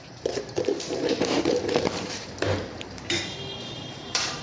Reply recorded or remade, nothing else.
remade